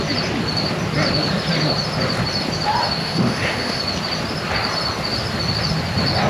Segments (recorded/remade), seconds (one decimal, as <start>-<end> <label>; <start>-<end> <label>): 0.0-3.0 recorded; 3.0-3.8 remade; 3.8-6.3 recorded